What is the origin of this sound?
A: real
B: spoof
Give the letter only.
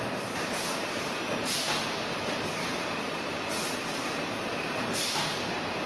B